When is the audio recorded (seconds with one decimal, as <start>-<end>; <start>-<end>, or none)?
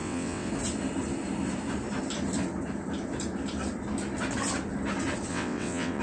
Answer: 0.5-5.3